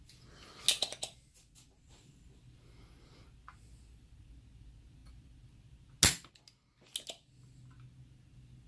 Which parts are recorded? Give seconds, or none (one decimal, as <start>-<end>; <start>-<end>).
0.0-8.7